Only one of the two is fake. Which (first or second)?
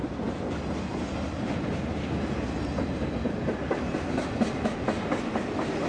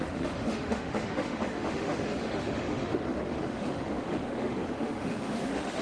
second